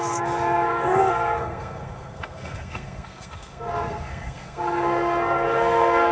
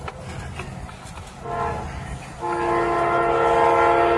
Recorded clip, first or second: second